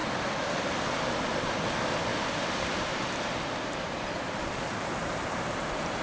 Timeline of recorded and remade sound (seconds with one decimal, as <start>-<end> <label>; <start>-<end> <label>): 0.0-2.1 recorded; 2.1-6.0 remade